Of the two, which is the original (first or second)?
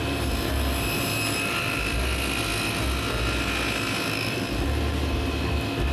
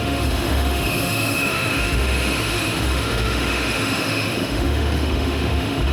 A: first